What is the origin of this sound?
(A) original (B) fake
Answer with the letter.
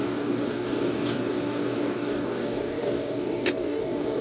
B